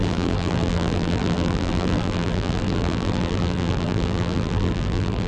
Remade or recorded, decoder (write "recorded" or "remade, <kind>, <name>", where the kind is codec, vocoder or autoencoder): remade, vocoder, BigVGAN v2